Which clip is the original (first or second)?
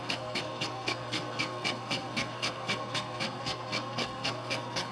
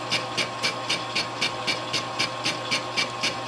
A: second